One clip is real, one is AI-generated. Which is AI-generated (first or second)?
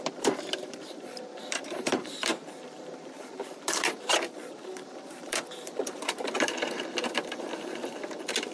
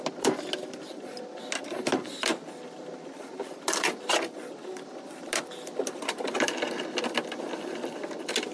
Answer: first